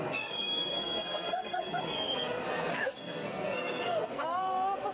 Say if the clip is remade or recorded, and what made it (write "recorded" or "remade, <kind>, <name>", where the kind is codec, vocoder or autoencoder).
remade, codec, SNAC